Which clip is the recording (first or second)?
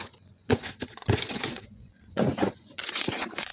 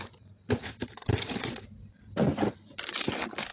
second